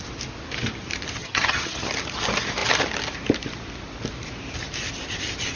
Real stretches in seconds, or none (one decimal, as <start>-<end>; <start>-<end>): 0.0-1.2; 1.9-5.6